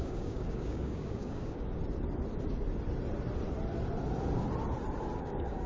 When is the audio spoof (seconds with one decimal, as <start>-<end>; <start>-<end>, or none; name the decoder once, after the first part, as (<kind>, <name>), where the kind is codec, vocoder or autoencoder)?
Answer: 0.0-1.8 (codec, DAC); 5.2-5.7